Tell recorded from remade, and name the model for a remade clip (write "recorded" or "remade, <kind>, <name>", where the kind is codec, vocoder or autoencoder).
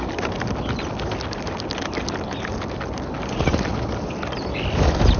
recorded